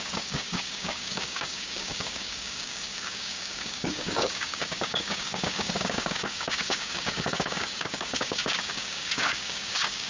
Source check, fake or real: fake